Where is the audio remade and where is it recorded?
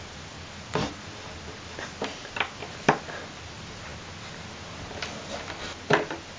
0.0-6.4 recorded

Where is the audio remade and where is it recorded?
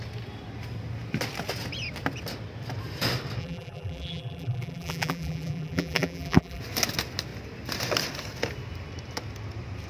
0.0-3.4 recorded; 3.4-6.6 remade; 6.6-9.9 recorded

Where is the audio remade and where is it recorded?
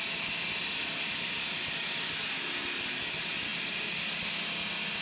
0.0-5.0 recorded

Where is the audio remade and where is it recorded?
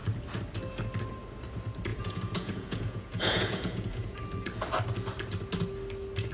0.0-1.9 recorded; 1.9-4.2 remade; 4.2-6.3 recorded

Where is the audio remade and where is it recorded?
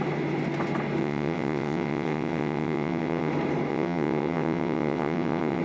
0.0-1.0 recorded; 1.0-3.3 remade; 3.3-3.7 recorded; 3.7-5.6 remade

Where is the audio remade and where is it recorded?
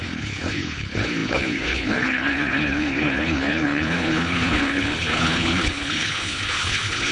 0.0-7.1 remade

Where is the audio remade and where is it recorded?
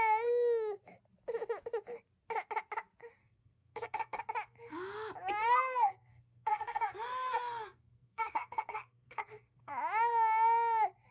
0.0-3.2 recorded; 3.2-4.2 remade; 4.2-5.4 recorded; 5.4-9.7 remade; 9.7-11.1 recorded